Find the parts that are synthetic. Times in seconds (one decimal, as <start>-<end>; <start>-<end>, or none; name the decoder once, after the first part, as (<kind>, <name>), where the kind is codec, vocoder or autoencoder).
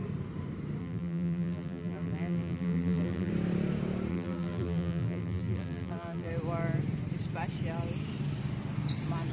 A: 0.8-3.3 (vocoder, BigVGAN v2); 4.1-6.3